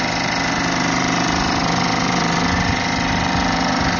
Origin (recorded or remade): remade